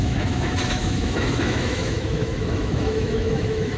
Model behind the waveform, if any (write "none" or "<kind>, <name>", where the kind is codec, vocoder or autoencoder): autoencoder, DAC-VAE